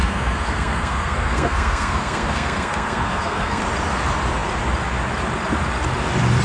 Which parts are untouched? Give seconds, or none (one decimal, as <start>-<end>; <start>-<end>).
3.6-6.4